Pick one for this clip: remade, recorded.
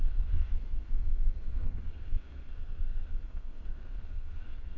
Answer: remade